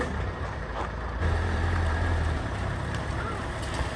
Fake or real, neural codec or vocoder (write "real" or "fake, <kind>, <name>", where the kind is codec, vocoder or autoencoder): fake, vocoder, BigVGAN v2